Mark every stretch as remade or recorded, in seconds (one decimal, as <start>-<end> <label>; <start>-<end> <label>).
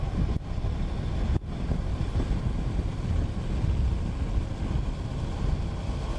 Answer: 0.0-1.9 recorded; 1.9-2.5 remade; 2.5-6.2 recorded